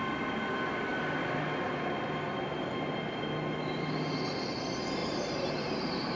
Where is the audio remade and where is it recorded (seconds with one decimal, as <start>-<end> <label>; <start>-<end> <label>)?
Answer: 0.0-5.0 recorded; 5.0-6.2 remade